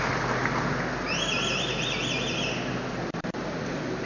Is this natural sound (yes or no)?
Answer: yes